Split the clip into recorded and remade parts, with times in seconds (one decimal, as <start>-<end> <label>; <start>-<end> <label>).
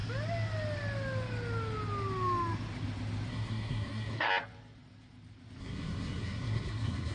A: 0.0-3.3 recorded; 3.3-4.3 remade; 4.3-5.6 recorded; 5.6-7.1 remade